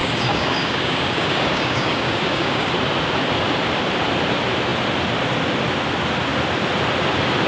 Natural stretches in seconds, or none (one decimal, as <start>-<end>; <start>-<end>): 2.7-7.5